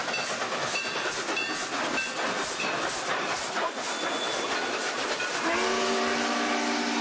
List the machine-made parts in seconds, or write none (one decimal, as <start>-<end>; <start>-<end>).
none